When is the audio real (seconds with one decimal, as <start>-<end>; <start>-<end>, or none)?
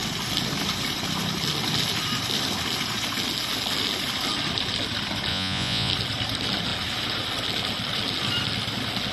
0.0-5.3; 5.9-9.1